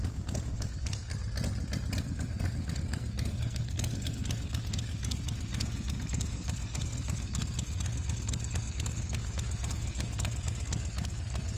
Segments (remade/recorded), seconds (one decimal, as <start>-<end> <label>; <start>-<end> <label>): 0.0-1.1 remade; 1.1-2.0 recorded; 2.0-11.6 remade